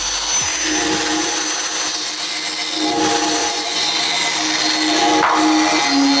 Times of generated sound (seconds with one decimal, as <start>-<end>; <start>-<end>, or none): 3.4-3.9